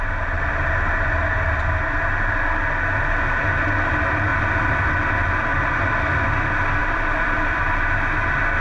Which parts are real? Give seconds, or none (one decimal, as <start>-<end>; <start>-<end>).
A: 0.0-5.5; 6.1-6.8